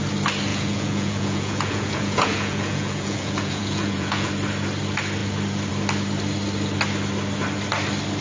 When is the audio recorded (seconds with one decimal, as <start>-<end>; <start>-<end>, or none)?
0.0-0.5; 4.3-8.2